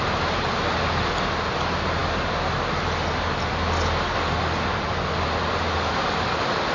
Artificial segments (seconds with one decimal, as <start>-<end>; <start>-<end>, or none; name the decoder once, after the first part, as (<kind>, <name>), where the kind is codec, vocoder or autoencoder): none